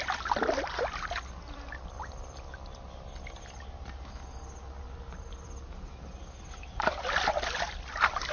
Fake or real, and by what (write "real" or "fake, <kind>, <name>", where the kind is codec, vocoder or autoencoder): real